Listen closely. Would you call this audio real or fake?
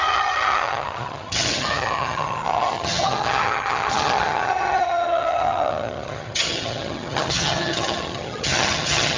fake